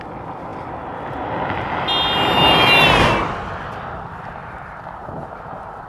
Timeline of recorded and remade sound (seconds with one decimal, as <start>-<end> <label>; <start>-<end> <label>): 0.0-4.4 recorded; 4.4-5.9 remade